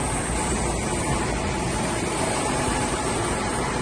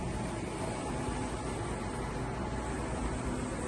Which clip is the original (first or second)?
second